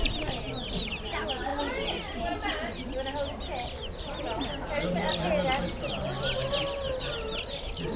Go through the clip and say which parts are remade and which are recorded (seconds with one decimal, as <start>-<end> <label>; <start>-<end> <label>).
0.0-8.0 recorded